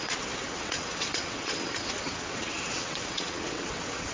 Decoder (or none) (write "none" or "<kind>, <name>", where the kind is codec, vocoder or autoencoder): vocoder, WaveNeXt